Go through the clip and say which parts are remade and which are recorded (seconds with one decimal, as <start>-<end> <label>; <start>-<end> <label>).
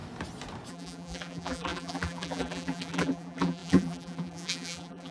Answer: 0.0-0.7 recorded; 0.7-5.1 remade